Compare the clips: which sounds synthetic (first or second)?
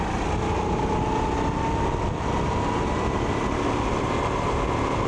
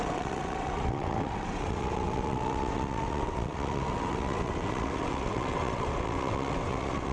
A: second